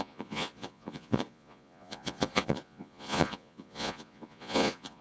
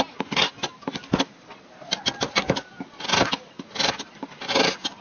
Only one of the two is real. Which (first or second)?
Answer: second